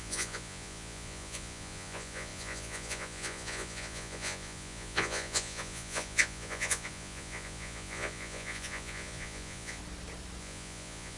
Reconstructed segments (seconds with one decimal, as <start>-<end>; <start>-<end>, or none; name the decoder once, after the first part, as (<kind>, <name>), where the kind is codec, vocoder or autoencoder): 0.0-9.8 (vocoder, Vocos); 10.4-11.2